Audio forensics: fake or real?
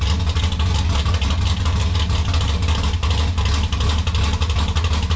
real